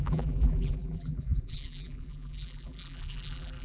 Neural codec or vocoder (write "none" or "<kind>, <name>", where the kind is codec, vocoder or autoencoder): vocoder, BigVGAN v2